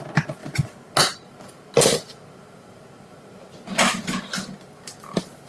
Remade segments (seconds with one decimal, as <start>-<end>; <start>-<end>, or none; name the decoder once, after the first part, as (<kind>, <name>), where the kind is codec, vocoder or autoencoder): none